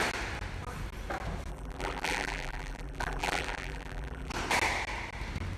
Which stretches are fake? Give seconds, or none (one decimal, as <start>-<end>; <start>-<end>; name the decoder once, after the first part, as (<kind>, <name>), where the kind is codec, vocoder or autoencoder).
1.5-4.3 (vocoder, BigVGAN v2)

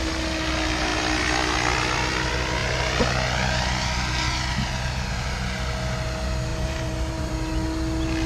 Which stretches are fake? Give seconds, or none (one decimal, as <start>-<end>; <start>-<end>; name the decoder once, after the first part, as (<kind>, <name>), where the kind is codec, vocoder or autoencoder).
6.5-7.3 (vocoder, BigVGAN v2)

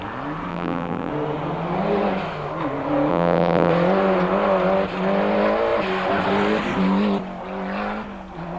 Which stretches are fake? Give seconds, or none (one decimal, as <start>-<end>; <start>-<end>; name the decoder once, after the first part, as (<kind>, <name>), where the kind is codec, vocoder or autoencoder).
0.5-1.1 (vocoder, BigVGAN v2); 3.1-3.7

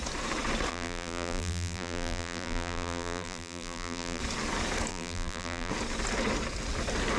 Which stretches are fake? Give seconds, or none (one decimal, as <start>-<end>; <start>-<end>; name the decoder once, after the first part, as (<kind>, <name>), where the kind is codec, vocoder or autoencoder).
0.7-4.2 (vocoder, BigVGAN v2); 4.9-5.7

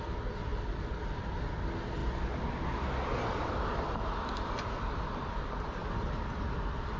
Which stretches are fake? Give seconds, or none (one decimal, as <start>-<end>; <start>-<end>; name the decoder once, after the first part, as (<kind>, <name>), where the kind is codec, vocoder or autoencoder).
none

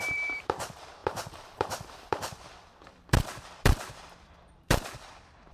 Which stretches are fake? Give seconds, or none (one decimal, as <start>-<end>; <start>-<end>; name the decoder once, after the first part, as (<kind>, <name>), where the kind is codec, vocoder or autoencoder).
0.0-5.5 (vocoder, BigVGAN v2)

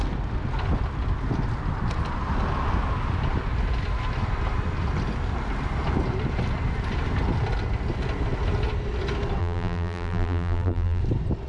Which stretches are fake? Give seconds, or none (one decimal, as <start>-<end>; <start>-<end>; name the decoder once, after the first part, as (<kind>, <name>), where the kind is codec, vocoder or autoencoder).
9.4-11.0 (vocoder, BigVGAN v2)

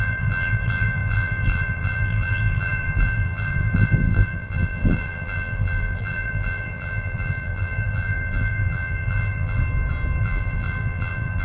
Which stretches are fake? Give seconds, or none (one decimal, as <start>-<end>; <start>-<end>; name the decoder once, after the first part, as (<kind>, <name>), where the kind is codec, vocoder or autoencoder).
0.0-9.6 (vocoder, BigVGAN v2); 10.2-11.4